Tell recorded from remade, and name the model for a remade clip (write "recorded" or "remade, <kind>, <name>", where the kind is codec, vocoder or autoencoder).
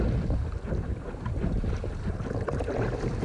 recorded